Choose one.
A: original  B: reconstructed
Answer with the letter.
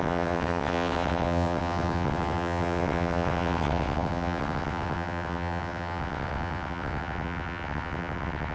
B